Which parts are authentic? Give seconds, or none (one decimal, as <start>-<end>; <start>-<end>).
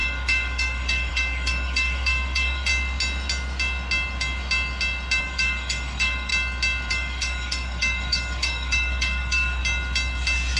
2.7-5.2; 6.3-6.9; 9.6-10.6